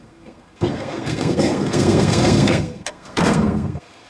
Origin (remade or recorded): remade